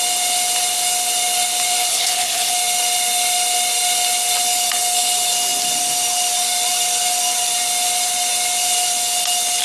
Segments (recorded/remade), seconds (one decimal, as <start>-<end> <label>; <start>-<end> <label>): 0.0-1.9 recorded; 1.9-2.5 remade; 2.5-9.6 recorded